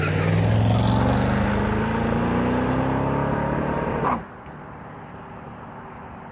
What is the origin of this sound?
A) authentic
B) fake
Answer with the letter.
A